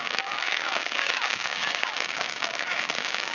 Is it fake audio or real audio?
fake